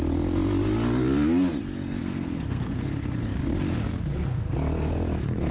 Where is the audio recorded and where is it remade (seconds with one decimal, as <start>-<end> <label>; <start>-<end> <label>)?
0.0-2.0 recorded; 2.0-2.9 remade; 2.9-5.5 recorded